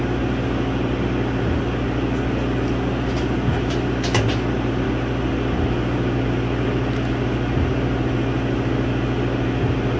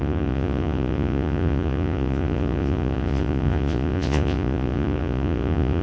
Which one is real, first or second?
first